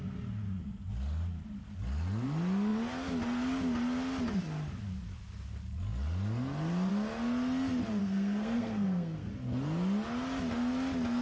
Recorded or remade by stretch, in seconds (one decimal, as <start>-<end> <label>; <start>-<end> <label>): 0.0-8.0 recorded; 8.0-9.3 remade; 9.3-11.2 recorded

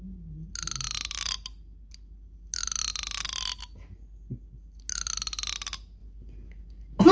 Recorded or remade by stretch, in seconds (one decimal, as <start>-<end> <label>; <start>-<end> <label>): 0.0-7.1 recorded

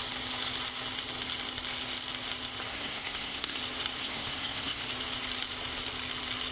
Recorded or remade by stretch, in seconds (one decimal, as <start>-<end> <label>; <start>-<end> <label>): 0.0-2.7 recorded; 2.7-3.6 remade; 3.6-4.0 recorded; 4.0-4.8 remade; 4.8-6.5 recorded

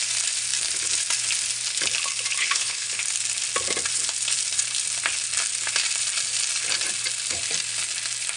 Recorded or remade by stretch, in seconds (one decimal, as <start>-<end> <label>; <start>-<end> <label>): 0.0-2.4 recorded; 2.4-3.0 remade; 3.0-8.4 recorded

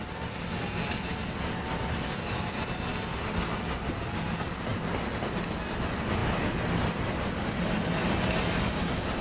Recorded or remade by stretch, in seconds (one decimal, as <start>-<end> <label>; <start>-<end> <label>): 0.0-9.2 recorded

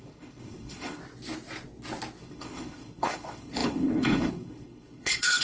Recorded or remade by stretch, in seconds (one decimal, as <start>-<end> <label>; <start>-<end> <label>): 0.0-1.0 remade; 1.0-2.2 recorded; 2.2-5.4 remade

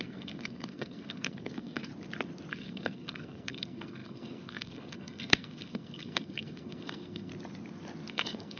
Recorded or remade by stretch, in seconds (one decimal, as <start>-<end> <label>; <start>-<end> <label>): 0.0-1.9 remade; 1.9-2.5 recorded; 2.5-7.3 remade; 7.3-8.1 recorded; 8.1-8.6 remade